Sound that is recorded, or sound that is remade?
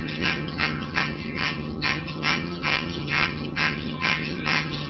remade